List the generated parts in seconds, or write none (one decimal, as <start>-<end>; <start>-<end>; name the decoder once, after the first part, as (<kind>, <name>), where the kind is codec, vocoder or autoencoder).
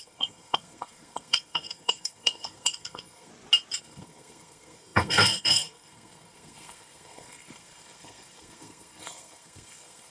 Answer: 0.0-3.3 (codec, SNAC); 3.8-10.1